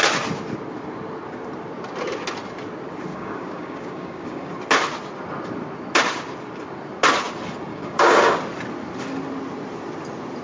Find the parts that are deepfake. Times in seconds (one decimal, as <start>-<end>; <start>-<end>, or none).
3.1-4.5; 7.7-8.4